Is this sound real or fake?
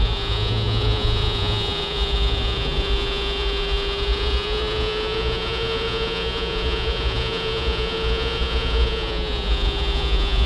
fake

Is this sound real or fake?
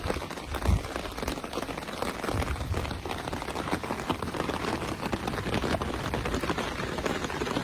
real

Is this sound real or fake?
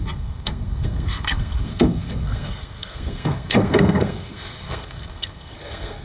fake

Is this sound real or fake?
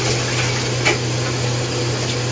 real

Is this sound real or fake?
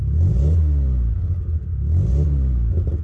real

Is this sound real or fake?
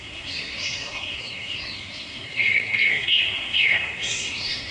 fake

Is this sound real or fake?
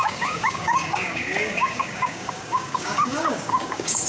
fake